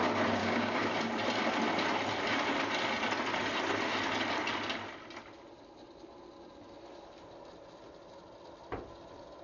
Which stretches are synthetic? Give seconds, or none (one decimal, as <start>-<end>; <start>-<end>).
0.4-0.9